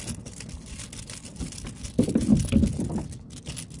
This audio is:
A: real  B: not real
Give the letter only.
A